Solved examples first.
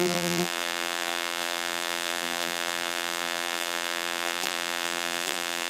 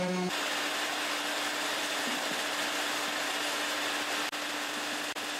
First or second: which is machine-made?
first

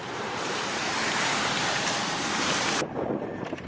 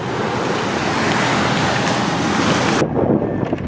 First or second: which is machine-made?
first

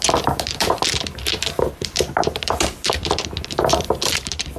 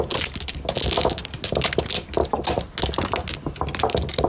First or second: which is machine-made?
first